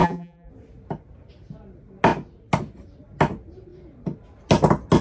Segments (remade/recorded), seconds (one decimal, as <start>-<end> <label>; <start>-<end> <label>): 0.0-0.5 remade; 0.5-5.0 recorded